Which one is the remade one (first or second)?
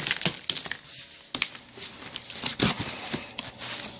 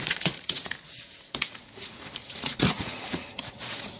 second